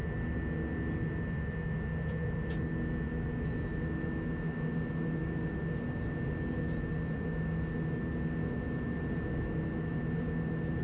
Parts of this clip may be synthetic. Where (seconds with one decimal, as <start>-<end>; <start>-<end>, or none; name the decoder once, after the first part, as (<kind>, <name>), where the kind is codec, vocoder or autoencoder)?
none

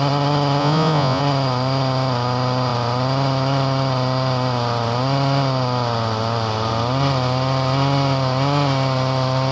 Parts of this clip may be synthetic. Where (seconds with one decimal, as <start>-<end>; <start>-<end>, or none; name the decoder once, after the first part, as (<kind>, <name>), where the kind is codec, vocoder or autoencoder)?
0.6-1.2 (vocoder, Vocos)